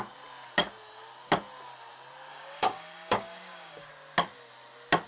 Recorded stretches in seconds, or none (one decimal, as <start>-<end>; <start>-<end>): 0.0-2.3; 3.9-5.1